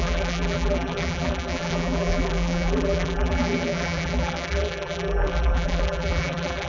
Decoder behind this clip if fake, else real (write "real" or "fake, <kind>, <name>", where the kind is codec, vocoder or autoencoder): fake, vocoder, BigVGAN v2